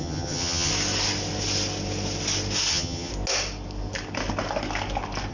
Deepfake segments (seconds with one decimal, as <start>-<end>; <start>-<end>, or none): 0.0-0.7; 2.7-3.1